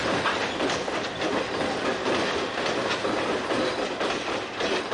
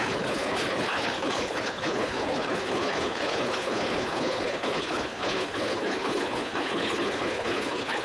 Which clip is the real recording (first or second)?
first